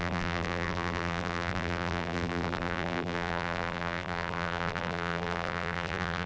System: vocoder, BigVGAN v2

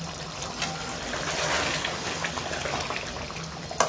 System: none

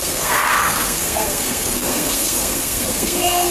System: codec, SNAC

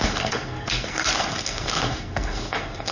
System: codec, SNAC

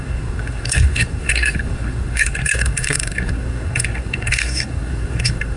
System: codec, SNAC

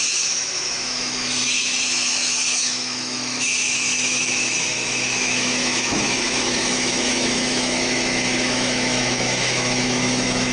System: autoencoder, DAC-VAE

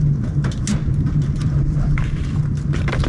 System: none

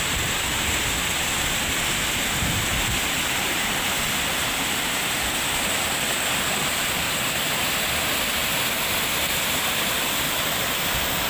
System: none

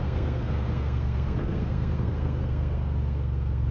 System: codec, SNAC